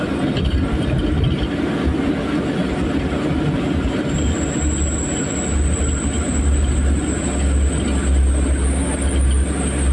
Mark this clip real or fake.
real